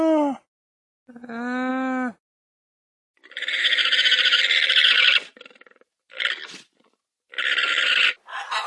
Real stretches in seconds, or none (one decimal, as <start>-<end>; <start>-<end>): 0.0-3.0; 4.4-8.7